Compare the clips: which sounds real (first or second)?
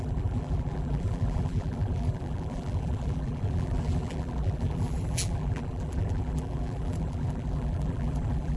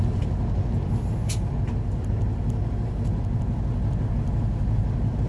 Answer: second